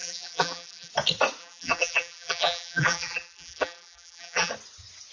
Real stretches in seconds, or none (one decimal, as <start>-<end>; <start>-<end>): 0.9-1.4; 4.5-5.1